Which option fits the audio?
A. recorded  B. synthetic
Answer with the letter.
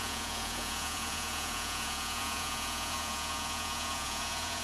B